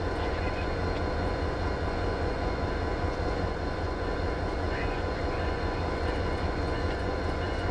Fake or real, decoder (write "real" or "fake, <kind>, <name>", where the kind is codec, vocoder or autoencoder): fake, vocoder, Vocos